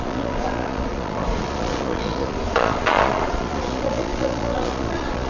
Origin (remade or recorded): remade